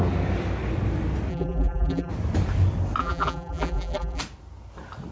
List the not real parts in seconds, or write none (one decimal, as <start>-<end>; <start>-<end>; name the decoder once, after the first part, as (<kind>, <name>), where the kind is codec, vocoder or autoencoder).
1.3-2.1 (vocoder, BigVGAN v2); 3.0-4.2